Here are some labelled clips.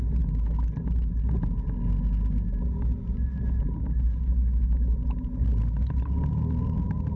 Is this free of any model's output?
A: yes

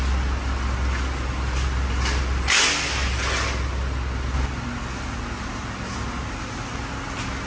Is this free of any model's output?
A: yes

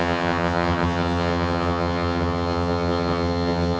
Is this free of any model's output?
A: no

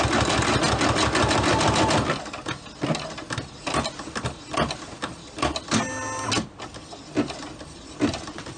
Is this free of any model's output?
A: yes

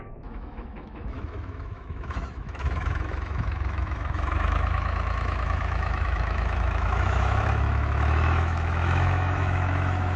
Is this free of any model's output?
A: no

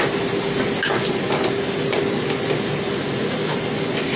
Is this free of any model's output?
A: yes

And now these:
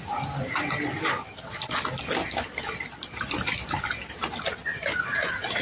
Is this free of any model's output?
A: yes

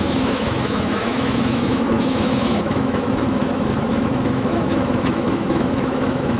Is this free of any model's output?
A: no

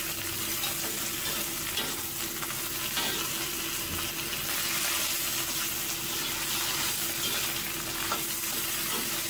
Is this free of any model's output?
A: yes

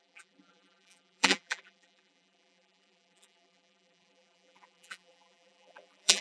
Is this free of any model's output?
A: no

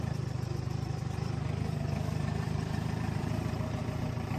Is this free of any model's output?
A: no